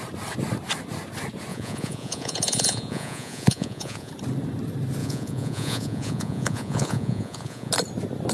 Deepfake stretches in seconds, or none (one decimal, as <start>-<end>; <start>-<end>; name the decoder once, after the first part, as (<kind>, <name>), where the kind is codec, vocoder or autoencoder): 1.5-4.1 (vocoder, Vocos); 5.0-7.7